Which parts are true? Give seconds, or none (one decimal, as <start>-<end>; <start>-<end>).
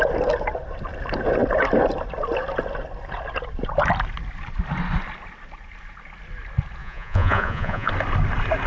0.0-6.8; 7.9-8.7